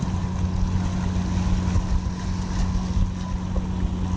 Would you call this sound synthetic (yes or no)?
no